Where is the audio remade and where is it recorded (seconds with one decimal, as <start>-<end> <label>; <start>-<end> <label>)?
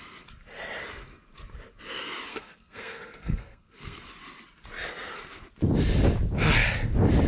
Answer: 0.0-2.3 recorded; 2.3-4.1 remade; 4.1-7.3 recorded